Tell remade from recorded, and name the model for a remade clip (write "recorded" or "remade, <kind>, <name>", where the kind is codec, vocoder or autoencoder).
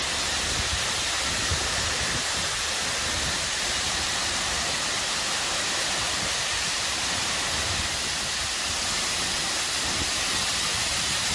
remade, vocoder, BigVGAN v2